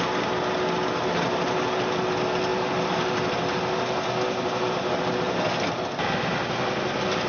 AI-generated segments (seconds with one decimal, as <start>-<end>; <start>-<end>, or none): none